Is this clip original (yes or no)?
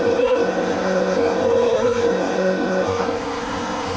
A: no